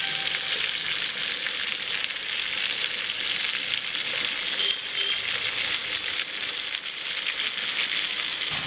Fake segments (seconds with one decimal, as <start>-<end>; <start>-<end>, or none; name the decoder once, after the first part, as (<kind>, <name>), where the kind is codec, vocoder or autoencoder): none